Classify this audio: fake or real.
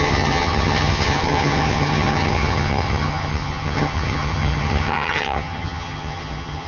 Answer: fake